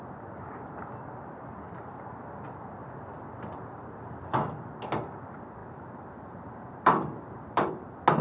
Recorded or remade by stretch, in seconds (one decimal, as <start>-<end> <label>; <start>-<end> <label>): 0.0-2.8 recorded; 2.8-3.7 remade; 3.7-5.6 recorded; 5.6-7.7 remade; 7.7-8.2 recorded